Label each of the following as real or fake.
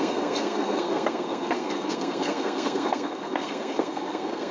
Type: fake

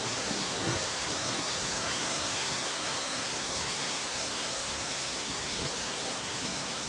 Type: fake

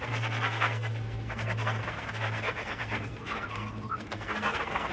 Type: fake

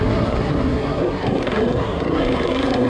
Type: fake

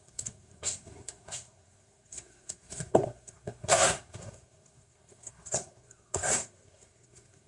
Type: fake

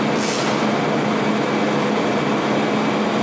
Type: real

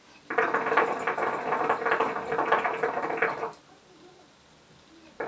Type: real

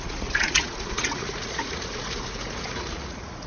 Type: fake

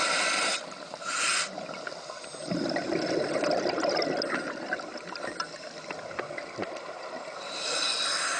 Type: real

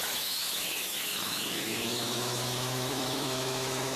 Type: fake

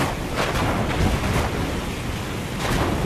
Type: real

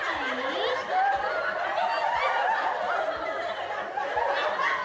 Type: real